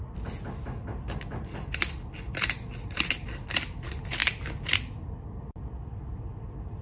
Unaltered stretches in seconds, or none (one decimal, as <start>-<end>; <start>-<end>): 0.0-6.8